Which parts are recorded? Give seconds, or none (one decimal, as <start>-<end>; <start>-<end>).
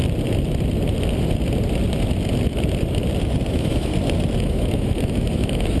0.0-3.5; 3.9-4.4